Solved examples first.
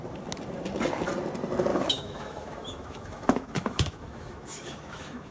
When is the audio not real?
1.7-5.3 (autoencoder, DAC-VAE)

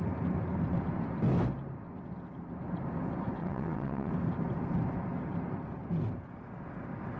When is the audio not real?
3.4-4.1 (vocoder, WaveNeXt)

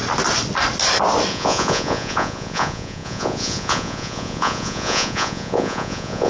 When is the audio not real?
1.3-6.3 (vocoder, Vocos)

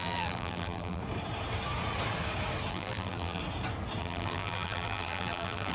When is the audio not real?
0.0-1.0 (vocoder, BigVGAN v2); 2.7-3.4; 4.0-5.7

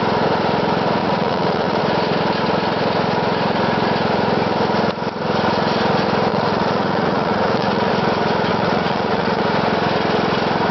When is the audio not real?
1.0-1.8 (vocoder, Vocos); 6.3-7.9; 8.5-9.4